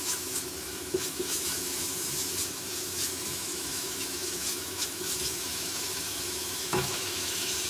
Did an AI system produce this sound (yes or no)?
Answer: yes